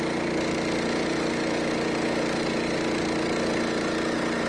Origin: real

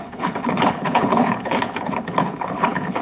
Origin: fake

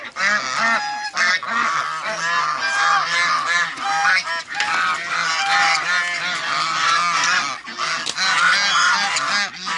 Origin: real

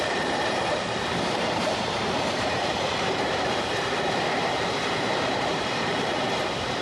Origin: fake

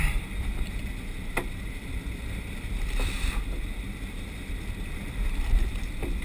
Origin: fake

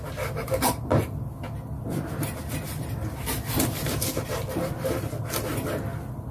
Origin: real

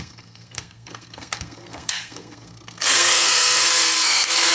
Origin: fake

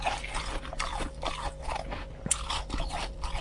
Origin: real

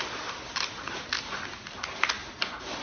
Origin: real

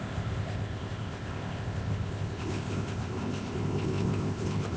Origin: fake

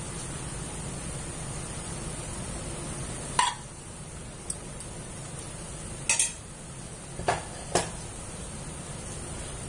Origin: real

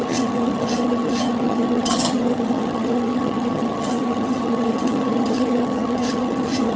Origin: fake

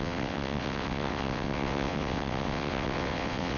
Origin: fake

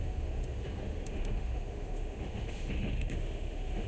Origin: fake